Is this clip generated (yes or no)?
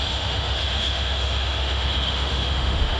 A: yes